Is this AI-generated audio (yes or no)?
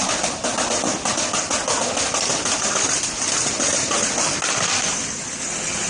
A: no